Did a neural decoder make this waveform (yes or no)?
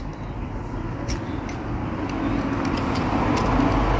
no